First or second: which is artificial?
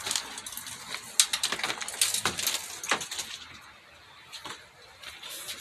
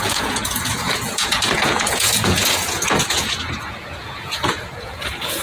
second